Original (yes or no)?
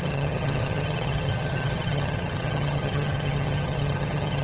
no